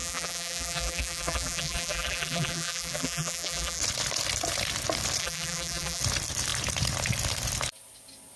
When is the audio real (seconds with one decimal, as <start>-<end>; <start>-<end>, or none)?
3.8-5.2; 6.0-8.4